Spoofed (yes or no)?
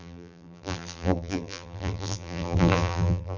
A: yes